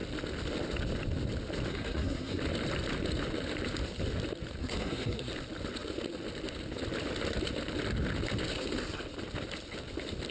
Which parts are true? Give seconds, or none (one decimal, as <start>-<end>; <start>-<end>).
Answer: 0.0-1.7; 2.4-4.6; 5.3-10.3